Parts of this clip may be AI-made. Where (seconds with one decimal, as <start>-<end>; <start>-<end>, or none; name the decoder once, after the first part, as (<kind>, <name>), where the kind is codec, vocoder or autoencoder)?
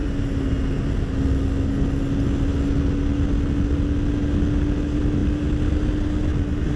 none